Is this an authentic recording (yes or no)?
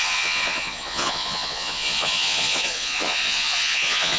no